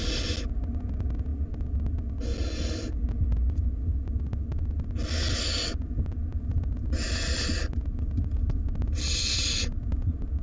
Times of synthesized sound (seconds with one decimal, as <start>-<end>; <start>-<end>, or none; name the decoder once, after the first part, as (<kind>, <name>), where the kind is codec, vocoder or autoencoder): none